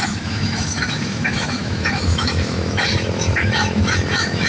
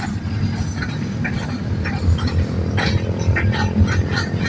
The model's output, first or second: first